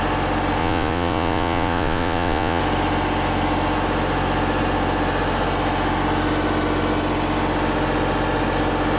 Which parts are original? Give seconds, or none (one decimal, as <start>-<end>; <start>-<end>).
0.0-0.6; 2.6-9.0